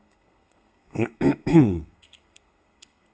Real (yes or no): no